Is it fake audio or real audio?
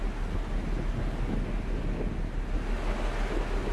real